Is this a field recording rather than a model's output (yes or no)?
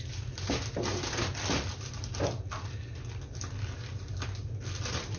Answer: yes